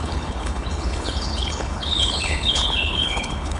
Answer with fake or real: fake